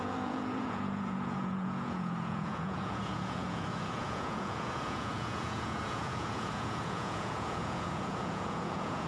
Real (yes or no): no